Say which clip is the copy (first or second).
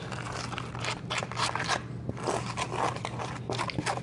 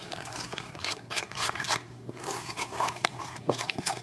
second